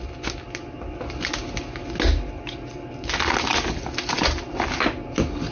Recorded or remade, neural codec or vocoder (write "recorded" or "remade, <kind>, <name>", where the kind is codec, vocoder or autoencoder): recorded